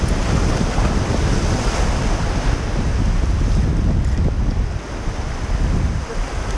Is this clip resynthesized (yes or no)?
no